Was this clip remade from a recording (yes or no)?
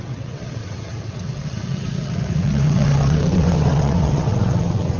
yes